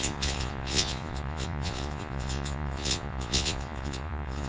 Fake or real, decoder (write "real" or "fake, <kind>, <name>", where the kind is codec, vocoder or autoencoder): fake, vocoder, Vocos